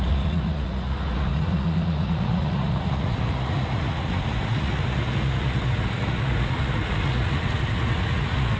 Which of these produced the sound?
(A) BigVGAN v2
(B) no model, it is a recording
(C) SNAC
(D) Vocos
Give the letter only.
D